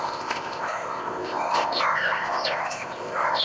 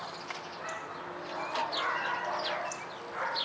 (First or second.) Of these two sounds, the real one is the second